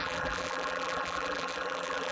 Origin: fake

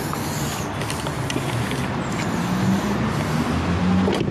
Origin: real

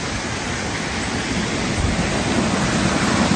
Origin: real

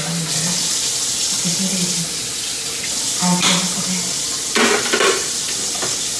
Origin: real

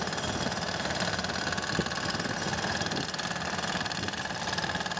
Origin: real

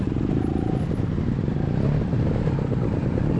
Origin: real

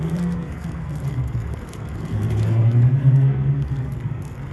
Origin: fake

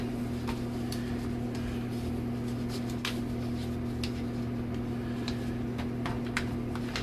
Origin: real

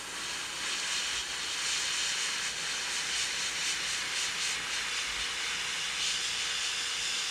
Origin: real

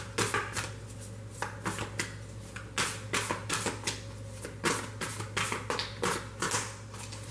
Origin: real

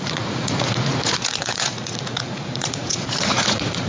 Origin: fake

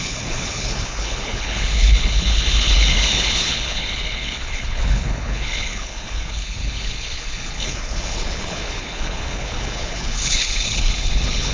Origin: fake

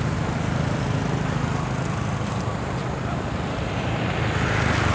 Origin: real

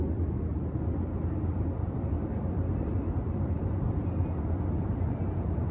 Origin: fake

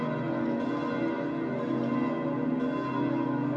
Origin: real